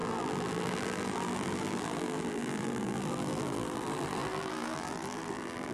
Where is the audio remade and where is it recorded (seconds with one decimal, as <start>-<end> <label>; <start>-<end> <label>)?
0.0-5.7 remade